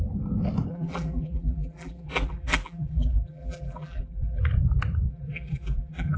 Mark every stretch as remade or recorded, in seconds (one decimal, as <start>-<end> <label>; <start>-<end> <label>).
0.0-0.7 recorded; 0.7-4.4 remade; 4.4-5.1 recorded; 5.1-6.2 remade